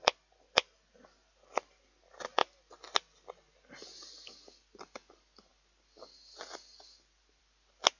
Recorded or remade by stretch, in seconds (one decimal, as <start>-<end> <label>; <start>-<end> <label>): 0.0-8.0 recorded